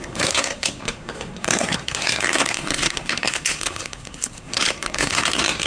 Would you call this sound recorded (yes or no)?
no